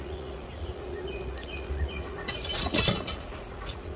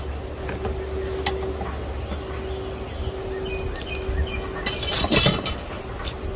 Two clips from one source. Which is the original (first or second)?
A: second